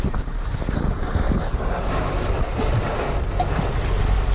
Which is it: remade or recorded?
recorded